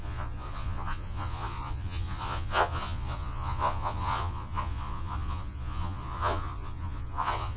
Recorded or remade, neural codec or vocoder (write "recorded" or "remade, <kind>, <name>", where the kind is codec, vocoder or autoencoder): remade, vocoder, Vocos